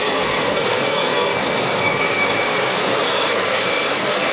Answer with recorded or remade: remade